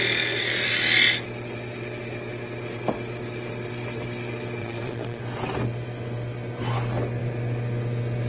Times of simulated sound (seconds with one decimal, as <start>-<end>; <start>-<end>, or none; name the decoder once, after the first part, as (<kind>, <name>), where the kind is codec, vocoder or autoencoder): 4.6-5.2 (vocoder, WaveNeXt)